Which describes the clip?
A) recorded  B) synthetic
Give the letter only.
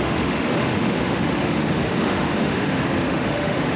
B